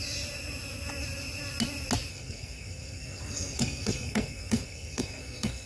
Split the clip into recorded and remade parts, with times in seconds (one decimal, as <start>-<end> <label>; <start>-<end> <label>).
0.0-2.1 recorded; 2.1-5.7 remade